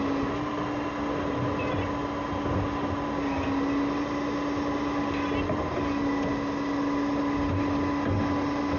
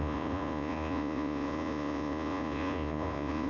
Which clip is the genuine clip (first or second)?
first